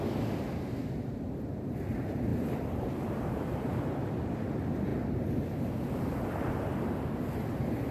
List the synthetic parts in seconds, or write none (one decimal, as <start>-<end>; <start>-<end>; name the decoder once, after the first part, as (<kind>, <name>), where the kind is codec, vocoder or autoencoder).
2.3-4.5 (vocoder, BigVGAN v2)